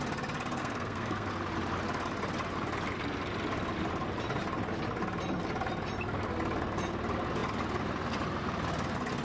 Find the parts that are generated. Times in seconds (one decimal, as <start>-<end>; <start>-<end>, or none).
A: 0.6-1.3